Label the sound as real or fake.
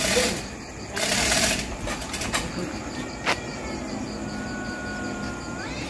real